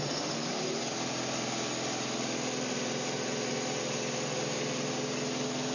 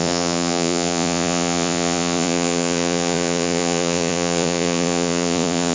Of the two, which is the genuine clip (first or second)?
first